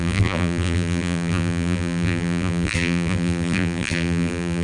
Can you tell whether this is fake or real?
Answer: fake